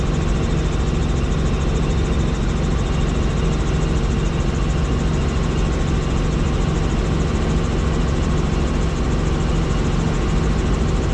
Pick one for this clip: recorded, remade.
recorded